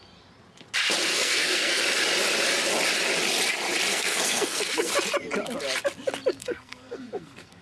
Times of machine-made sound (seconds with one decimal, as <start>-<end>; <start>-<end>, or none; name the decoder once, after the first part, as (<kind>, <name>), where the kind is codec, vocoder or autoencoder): 1.1-1.8 (codec, SNAC); 3.9-4.9; 6.3-7.6